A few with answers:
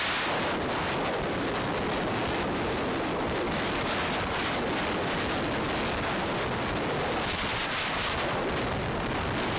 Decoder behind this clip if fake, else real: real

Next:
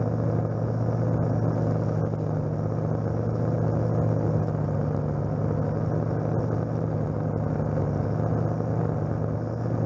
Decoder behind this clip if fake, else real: real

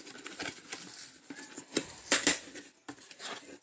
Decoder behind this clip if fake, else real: real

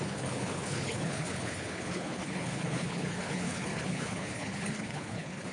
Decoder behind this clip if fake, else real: fake, codec, HILCodec